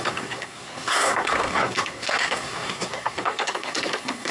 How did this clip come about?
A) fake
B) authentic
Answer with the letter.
A